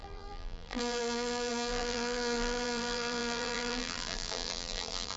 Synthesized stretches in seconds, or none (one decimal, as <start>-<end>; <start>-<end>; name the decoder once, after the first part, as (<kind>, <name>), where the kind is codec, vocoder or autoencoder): 0.0-5.2 (vocoder, BigVGAN v2)